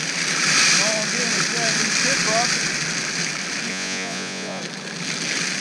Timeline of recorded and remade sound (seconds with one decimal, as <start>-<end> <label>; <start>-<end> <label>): 0.0-3.7 recorded; 3.7-4.6 remade; 4.6-5.6 recorded